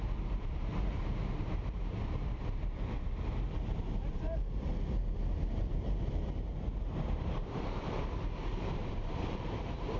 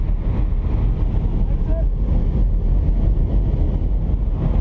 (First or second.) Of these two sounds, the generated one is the first